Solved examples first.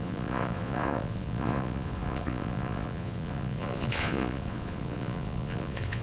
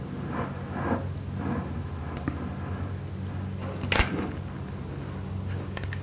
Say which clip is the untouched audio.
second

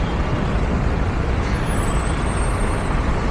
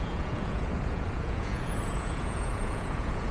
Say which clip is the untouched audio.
first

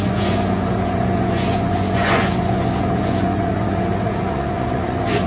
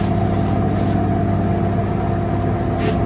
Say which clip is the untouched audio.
second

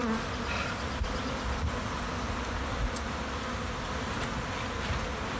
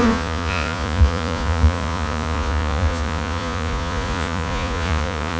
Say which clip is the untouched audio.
first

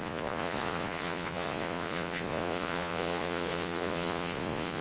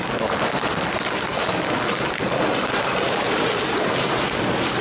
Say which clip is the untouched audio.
second